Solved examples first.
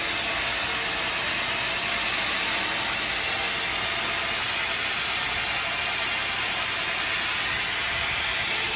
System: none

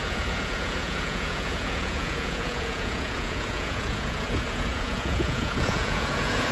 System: vocoder, Vocos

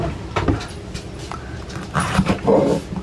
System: none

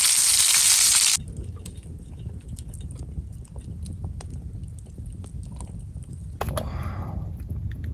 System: none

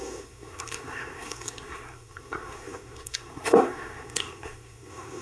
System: codec, SNAC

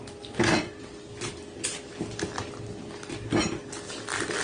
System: none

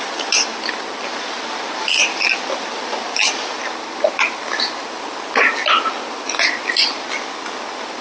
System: none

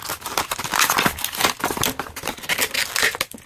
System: none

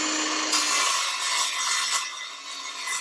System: none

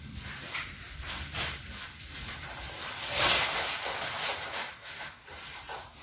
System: vocoder, BigVGAN v2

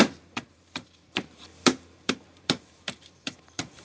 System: vocoder, BigVGAN v2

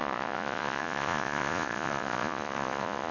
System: vocoder, Vocos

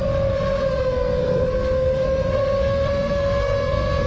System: codec, SNAC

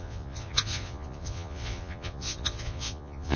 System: vocoder, Vocos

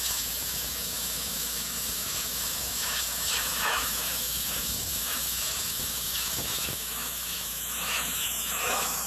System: autoencoder, DAC-VAE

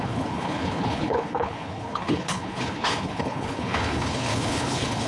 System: codec, HILCodec